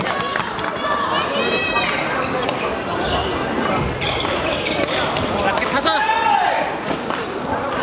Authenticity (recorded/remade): recorded